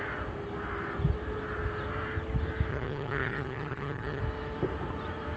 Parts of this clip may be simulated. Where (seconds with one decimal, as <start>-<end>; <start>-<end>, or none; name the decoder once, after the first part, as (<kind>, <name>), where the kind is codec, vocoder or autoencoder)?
2.7-4.2 (vocoder, HiFi-GAN)